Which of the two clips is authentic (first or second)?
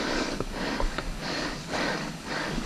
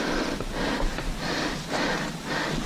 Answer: second